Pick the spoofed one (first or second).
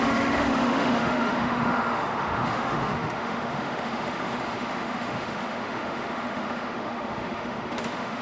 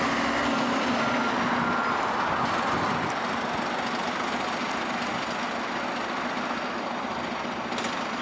first